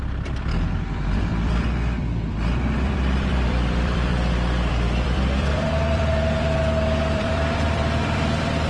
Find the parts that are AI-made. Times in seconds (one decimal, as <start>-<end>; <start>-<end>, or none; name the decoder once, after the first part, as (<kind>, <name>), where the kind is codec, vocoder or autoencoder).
0.0-4.1 (vocoder, BigVGAN v2); 4.7-8.7